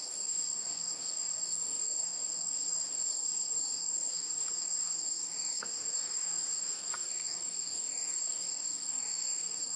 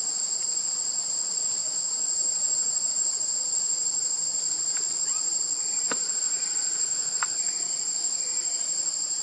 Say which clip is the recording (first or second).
second